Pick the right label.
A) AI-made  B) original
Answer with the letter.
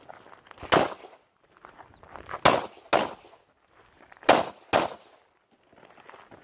B